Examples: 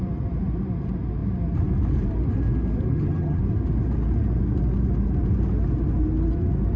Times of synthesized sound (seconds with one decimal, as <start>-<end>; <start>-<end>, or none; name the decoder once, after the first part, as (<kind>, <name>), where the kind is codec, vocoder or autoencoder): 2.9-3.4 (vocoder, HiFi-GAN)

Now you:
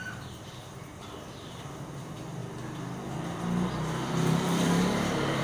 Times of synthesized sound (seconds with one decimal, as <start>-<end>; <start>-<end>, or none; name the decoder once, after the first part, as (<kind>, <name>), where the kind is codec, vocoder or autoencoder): 0.0-2.4 (vocoder, BigVGAN v2); 4.1-5.4

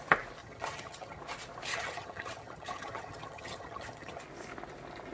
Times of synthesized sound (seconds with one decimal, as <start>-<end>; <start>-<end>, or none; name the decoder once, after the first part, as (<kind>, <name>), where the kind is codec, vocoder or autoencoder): 0.4-1.2 (vocoder, HiFi-GAN); 1.7-4.2

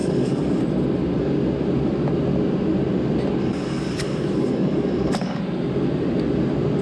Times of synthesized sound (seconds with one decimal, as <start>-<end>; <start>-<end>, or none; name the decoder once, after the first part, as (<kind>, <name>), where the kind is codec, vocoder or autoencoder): 0.0-0.6 (codec, DAC); 3.4-5.4

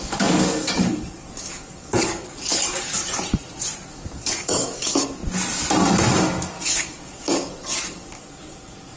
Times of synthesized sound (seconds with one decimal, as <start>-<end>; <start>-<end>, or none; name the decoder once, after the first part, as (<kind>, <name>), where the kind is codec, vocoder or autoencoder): 0.0-3.0 (codec, DAC); 3.9-5.2; 6.5-9.0